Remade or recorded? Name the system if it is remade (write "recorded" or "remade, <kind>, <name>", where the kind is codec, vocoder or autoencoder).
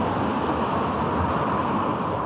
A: recorded